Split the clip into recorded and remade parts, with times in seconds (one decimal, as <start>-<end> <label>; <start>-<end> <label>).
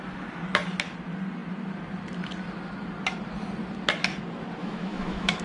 0.0-4.6 recorded; 4.6-5.4 remade